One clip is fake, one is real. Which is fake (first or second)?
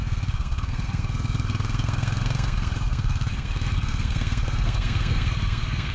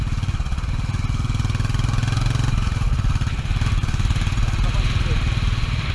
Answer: first